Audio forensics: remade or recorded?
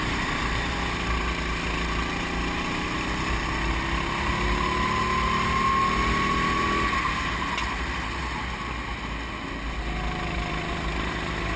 recorded